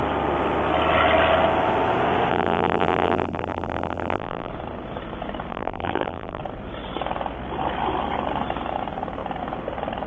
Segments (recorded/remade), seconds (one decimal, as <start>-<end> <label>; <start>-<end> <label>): 0.0-2.3 recorded; 2.3-4.5 remade; 4.5-5.5 recorded; 5.5-6.4 remade; 6.4-10.1 recorded